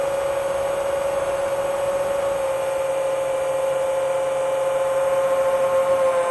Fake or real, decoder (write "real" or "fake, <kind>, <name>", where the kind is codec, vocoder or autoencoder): real